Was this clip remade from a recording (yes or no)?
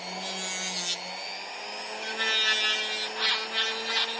no